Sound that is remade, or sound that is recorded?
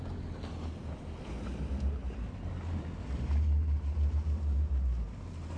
recorded